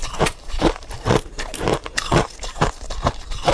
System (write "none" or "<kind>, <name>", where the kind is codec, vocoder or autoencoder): vocoder, BigVGAN v2